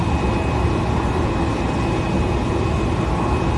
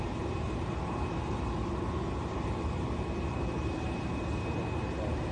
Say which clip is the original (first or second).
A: first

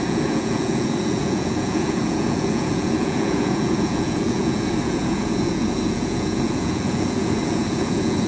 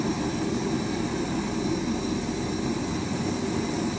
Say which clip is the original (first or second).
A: second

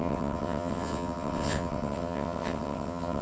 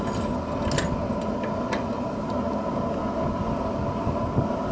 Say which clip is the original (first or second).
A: second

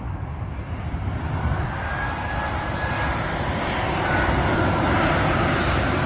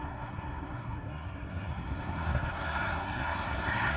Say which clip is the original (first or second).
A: first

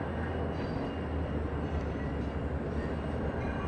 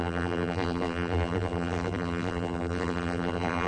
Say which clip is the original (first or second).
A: first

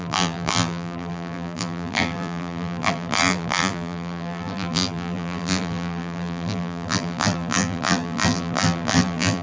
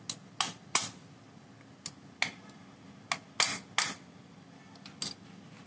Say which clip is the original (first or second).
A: second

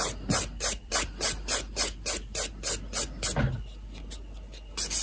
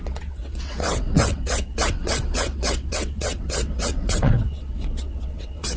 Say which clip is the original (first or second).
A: first